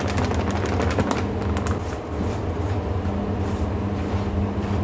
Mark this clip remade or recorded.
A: recorded